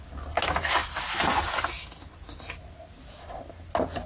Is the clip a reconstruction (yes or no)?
no